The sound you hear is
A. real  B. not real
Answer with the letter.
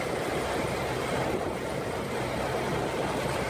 A